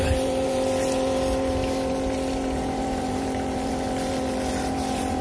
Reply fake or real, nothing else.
fake